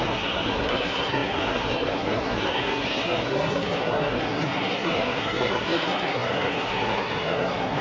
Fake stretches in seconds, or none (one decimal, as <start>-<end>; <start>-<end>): 0.0-7.8